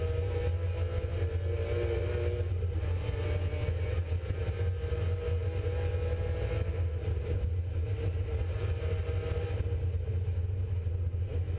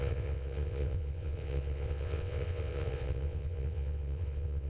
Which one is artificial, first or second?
second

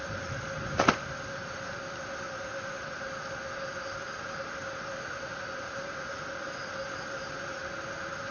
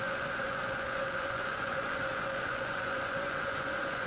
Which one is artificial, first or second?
second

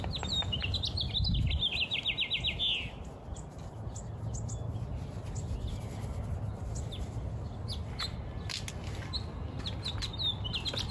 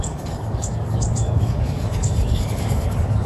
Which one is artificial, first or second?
second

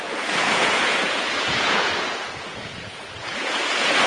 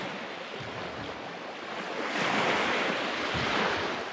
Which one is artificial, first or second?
first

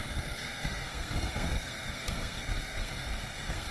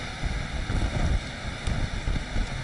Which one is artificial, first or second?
first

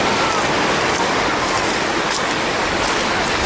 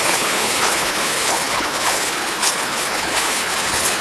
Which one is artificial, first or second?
second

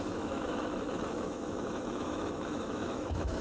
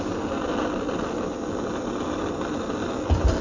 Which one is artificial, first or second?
first